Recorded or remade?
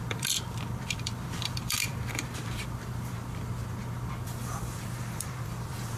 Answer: remade